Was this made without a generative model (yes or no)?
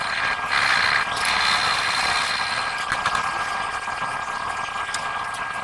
yes